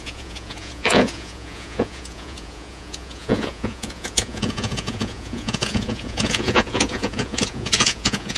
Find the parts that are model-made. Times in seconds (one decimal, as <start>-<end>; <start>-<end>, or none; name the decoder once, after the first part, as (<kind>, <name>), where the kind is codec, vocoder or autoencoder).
0.0-8.4 (vocoder, Vocos)